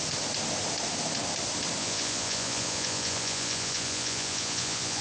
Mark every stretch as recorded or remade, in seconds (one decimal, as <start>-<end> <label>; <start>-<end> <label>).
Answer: 0.0-1.8 recorded; 1.8-5.0 remade